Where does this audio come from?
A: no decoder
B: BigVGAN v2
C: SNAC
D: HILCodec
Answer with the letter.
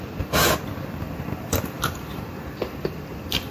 B